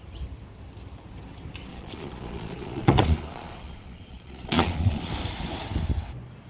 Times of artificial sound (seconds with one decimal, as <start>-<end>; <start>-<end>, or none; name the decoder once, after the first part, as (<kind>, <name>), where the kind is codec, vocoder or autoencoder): 1.7-5.1 (vocoder, Vocos)